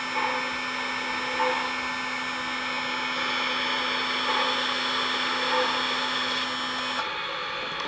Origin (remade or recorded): recorded